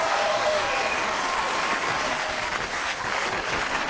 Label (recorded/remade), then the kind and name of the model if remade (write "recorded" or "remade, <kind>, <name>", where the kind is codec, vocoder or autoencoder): remade, codec, DAC